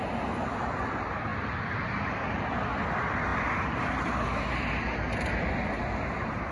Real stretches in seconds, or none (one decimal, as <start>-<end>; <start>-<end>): 0.0-1.3; 1.9-6.5